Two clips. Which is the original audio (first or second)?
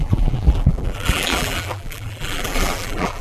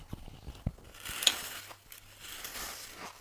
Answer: second